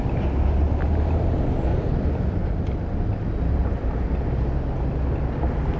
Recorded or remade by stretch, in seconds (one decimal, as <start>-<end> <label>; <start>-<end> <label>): 0.0-1.7 recorded; 1.7-2.5 remade; 2.5-3.6 recorded; 3.6-4.2 remade; 4.2-5.8 recorded